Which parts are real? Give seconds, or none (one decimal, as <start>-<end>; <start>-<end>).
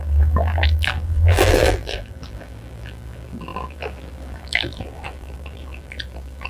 none